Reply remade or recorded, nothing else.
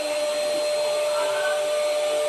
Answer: recorded